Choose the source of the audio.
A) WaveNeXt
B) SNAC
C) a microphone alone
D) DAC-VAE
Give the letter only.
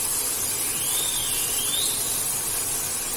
C